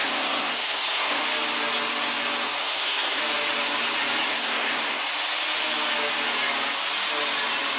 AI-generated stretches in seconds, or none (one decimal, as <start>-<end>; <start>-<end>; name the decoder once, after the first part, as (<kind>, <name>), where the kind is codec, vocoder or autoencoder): 0.0-1.2 (codec, SNAC); 2.6-3.2; 4.3-5.0